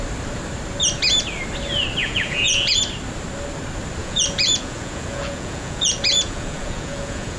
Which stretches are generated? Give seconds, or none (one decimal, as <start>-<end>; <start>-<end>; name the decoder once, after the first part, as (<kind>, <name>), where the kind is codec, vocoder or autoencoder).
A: 2.0-2.8 (vocoder, Vocos); 4.0-7.4

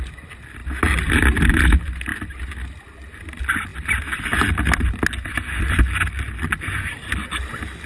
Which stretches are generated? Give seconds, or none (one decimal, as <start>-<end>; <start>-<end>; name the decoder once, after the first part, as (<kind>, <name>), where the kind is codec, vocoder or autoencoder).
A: none

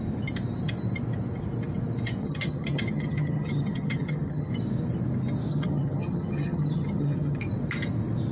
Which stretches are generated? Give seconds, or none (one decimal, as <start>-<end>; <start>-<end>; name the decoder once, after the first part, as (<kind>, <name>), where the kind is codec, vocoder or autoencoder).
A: 2.2-4.5 (vocoder, HiFi-GAN); 5.5-7.4

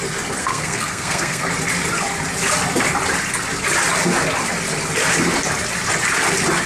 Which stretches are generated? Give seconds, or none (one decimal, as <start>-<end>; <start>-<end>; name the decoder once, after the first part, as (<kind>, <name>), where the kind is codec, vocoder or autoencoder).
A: 0.4-1.4 (codec, SNAC)

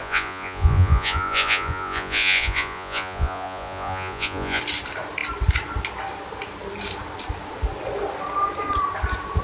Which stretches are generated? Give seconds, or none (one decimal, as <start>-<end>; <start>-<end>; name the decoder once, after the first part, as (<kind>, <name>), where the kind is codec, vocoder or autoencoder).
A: 0.0-4.6 (vocoder, Vocos)